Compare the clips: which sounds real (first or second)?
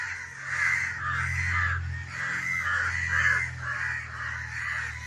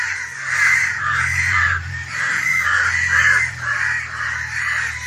first